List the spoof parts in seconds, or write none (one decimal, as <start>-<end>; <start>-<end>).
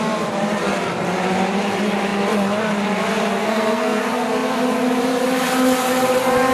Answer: 3.4-4.0